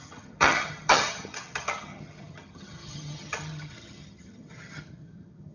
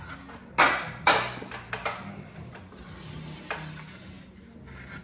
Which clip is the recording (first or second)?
second